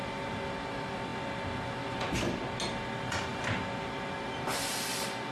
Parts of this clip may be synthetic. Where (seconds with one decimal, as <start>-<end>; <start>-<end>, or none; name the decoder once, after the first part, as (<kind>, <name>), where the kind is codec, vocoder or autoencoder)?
none